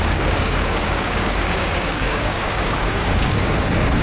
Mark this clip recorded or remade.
remade